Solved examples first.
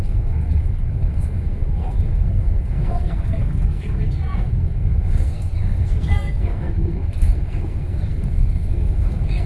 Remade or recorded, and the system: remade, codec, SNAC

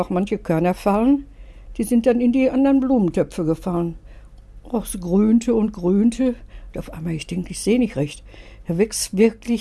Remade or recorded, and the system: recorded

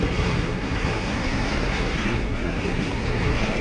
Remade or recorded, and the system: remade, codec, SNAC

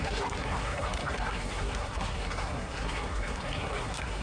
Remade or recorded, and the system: remade, codec, SNAC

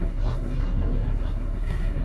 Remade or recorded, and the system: remade, codec, SNAC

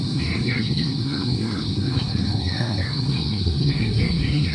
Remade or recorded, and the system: remade, codec, SNAC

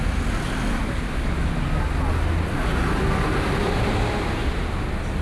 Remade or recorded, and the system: recorded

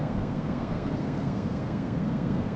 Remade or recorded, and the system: remade, codec, SNAC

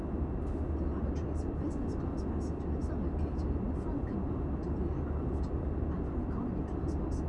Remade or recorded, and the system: recorded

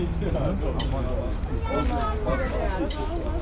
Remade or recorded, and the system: recorded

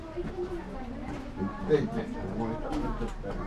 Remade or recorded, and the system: recorded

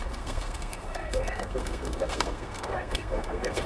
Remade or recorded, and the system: remade, codec, SNAC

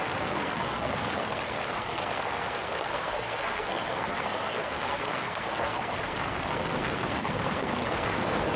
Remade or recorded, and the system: remade, codec, SNAC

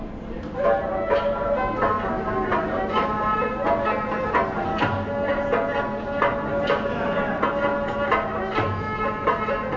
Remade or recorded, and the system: recorded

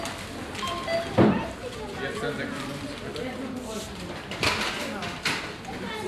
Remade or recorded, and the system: recorded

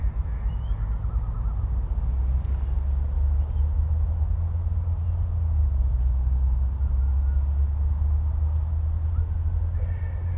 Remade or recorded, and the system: recorded